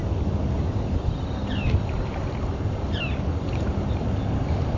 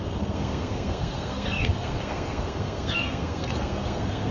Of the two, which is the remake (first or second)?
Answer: second